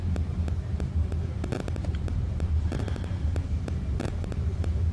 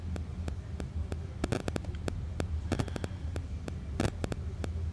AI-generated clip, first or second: first